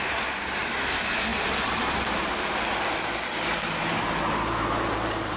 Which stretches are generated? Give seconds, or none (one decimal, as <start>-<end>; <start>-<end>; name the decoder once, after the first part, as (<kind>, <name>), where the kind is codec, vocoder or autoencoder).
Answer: none